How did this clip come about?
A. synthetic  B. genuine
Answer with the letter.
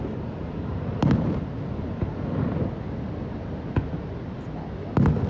B